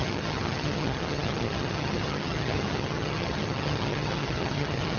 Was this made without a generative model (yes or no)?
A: no